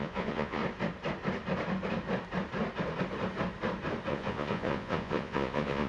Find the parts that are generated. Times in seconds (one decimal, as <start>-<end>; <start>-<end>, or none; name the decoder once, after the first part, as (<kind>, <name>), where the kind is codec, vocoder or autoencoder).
0.0-0.6 (vocoder, Vocos); 4.1-5.9